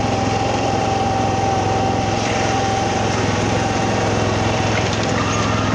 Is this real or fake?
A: fake